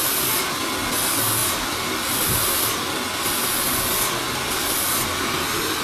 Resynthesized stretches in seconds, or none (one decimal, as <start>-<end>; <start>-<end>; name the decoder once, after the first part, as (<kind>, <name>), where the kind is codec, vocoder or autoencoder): none